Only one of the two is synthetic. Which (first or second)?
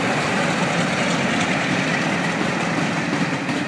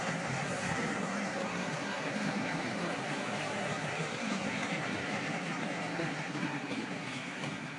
second